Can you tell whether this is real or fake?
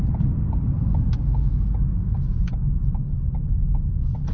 real